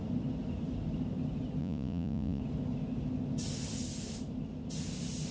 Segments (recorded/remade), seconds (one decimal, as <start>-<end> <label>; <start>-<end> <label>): 0.0-1.6 recorded; 1.6-2.4 remade; 2.4-5.3 recorded